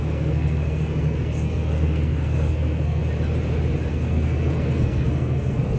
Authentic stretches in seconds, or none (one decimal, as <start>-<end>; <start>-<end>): 3.0-3.9

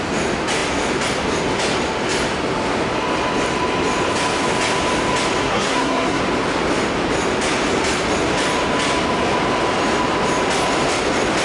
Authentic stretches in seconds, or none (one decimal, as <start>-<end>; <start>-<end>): 0.0-5.4; 6.2-11.4